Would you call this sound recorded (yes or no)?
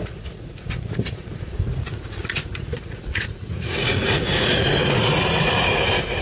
no